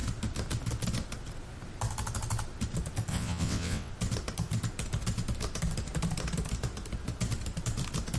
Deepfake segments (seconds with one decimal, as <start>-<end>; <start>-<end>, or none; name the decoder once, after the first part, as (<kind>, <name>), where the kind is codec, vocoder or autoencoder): 3.1-3.9 (vocoder, WaveNeXt)